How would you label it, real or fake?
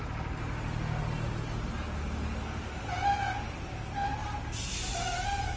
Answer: real